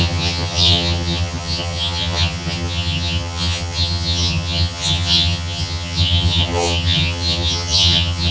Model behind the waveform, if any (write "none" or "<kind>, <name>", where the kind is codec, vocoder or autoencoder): vocoder, HiFi-GAN